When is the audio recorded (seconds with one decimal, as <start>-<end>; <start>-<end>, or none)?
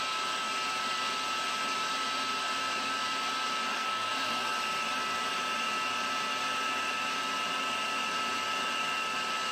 0.0-3.7; 4.5-9.5